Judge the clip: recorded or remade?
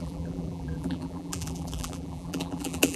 remade